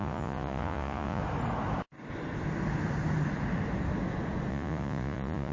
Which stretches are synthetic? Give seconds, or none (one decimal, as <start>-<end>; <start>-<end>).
0.0-1.2; 4.5-5.5